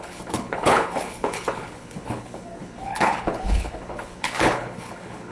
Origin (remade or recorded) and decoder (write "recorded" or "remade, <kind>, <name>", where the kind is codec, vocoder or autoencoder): remade, codec, HILCodec